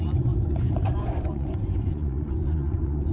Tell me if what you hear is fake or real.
fake